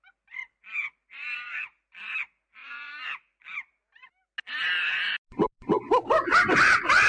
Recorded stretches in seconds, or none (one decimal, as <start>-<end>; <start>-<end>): 0.0-7.1